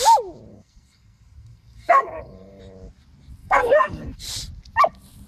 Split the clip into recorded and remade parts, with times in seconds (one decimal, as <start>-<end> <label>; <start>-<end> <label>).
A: 0.0-0.5 recorded; 0.5-2.6 remade; 2.6-3.4 recorded; 3.4-4.2 remade; 4.2-5.3 recorded